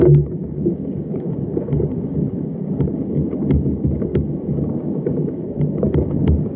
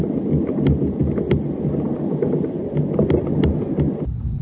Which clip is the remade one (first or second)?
first